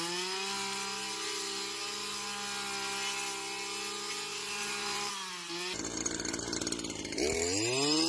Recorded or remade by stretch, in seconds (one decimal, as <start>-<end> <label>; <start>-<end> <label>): 0.0-4.3 recorded; 4.3-5.1 remade; 5.1-8.1 recorded